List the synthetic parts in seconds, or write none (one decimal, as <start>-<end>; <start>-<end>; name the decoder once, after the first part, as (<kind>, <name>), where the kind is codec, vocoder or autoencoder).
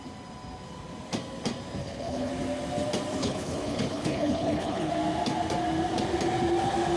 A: 1.8-2.3 (codec, HILCodec); 3.2-4.9